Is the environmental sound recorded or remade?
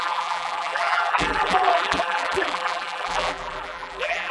remade